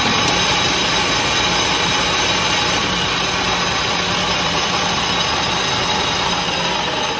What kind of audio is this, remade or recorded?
recorded